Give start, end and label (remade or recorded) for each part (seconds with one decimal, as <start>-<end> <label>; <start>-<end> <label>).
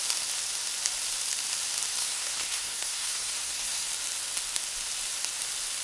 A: 0.0-2.0 recorded; 2.0-3.9 remade; 3.9-5.8 recorded